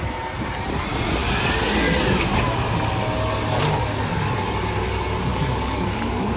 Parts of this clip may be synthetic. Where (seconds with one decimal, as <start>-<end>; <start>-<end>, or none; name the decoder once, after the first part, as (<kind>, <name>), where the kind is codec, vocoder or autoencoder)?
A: 5.3-6.4 (codec, DAC)